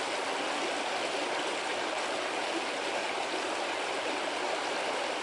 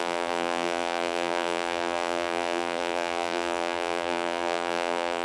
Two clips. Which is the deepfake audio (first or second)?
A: second